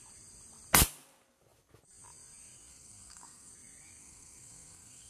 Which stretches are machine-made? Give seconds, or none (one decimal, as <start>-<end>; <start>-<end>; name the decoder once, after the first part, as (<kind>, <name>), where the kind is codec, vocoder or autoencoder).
2.7-3.5 (codec, SNAC); 4.0-5.1